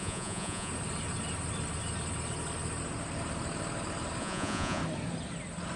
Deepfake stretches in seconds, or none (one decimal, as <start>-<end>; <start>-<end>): 0.0-0.7; 4.2-4.8